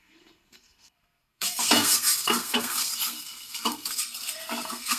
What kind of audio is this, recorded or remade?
remade